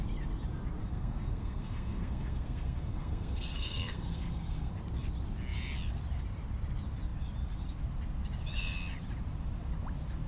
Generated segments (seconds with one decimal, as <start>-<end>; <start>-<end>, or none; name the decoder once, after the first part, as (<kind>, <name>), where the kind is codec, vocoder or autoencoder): 0.8-4.7 (codec, SNAC)